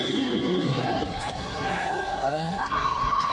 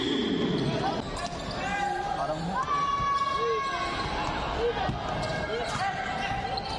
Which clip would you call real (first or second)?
second